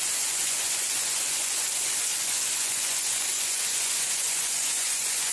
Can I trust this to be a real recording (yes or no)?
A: no